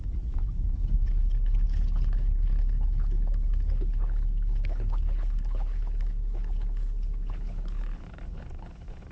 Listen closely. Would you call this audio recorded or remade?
remade